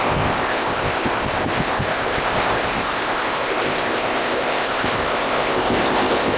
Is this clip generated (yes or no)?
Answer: yes